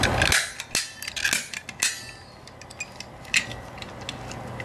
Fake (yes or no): no